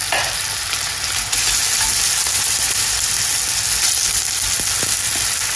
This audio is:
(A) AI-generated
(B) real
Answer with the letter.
B